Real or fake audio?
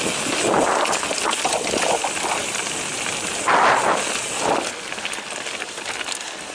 real